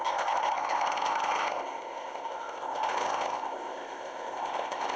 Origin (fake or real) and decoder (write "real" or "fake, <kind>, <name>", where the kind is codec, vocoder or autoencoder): fake, codec, ZipCodec